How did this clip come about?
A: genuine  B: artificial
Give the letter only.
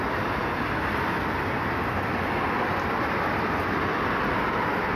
A